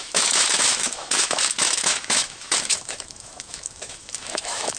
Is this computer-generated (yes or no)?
yes